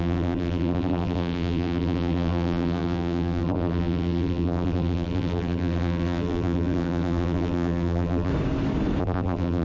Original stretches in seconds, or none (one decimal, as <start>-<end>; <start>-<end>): 8.3-9.0